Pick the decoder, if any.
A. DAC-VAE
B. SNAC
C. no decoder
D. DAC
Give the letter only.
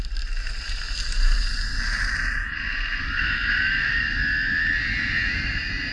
C